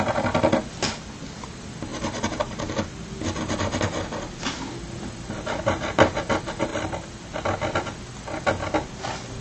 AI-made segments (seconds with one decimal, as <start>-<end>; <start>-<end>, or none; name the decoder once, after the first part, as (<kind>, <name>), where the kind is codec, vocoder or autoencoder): 6.7-7.4 (vocoder, BigVGAN v2)